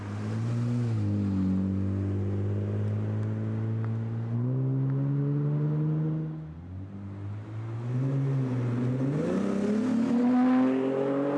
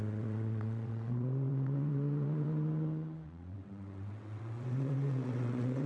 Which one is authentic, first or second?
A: first